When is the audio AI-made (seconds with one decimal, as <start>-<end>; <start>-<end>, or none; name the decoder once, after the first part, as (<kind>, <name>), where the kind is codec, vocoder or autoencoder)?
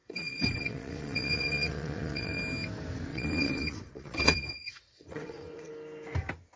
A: 0.0-2.4 (vocoder, WaveNeXt); 3.1-5.7